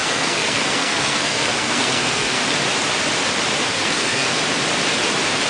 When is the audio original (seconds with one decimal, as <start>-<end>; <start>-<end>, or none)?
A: 2.4-3.7; 4.4-5.5